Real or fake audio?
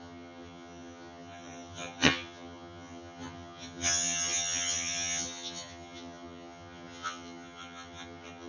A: fake